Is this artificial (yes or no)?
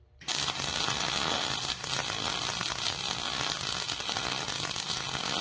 no